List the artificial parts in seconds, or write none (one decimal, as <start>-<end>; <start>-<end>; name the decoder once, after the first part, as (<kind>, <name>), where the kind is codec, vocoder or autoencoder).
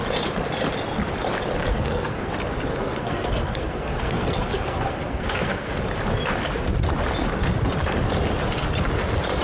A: 1.6-2.3 (codec, SNAC); 2.7-5.8